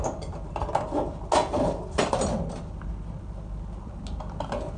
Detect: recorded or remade recorded